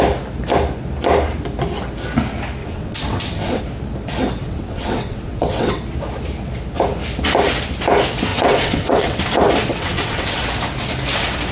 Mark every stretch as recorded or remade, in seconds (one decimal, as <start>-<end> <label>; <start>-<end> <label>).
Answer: 0.0-2.6 recorded; 2.6-3.6 remade; 3.6-4.4 recorded; 4.4-5.8 remade; 5.8-8.3 recorded; 8.3-9.2 remade; 9.2-9.7 recorded; 9.7-10.4 remade; 10.4-11.5 recorded